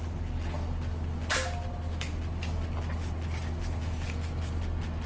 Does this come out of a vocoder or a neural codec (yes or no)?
no